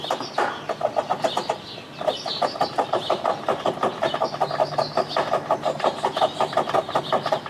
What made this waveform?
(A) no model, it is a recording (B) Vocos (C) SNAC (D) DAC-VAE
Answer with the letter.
A